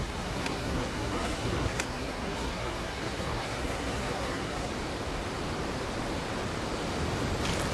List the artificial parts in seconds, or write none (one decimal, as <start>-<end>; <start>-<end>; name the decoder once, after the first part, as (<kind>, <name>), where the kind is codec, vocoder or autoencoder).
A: 0.0-4.7 (codec, SNAC)